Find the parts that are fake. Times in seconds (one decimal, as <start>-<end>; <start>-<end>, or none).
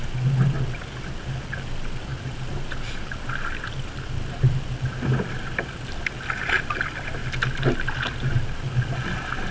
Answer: none